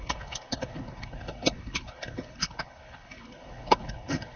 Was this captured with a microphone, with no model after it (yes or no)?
no